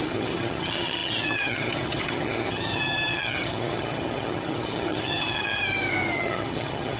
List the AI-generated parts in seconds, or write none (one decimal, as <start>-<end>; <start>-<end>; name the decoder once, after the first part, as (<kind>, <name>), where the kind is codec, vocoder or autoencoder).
0.0-5.6 (vocoder, HiFi-GAN); 6.1-7.0